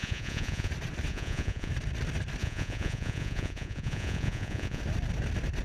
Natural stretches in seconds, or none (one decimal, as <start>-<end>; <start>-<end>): 0.7-1.1; 1.7-2.4; 4.8-5.6